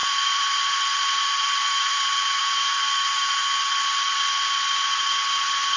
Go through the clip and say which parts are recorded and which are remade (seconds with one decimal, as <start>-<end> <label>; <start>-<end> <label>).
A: 0.0-2.4 remade; 2.4-5.8 recorded